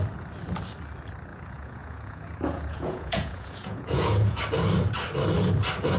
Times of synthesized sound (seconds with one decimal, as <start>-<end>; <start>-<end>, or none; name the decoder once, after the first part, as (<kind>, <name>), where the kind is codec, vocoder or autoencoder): 1.3-4.4 (vocoder, Vocos)